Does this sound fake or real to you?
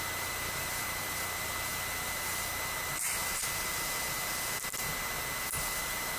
real